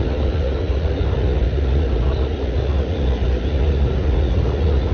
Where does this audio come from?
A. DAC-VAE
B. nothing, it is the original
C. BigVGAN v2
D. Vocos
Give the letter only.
D